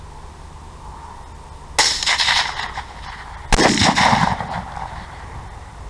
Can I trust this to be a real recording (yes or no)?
yes